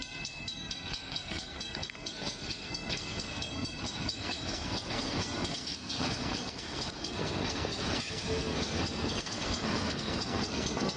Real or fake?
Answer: fake